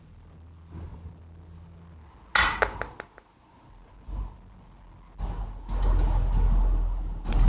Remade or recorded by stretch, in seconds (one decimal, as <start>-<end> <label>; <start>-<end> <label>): 0.0-7.5 recorded